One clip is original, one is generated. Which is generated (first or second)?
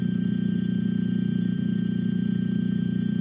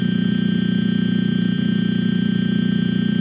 first